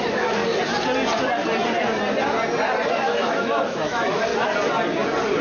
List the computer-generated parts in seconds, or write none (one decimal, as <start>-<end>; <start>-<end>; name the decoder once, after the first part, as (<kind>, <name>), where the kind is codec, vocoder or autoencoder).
0.0-0.4 (autoencoder, DAC-VAE); 2.9-4.3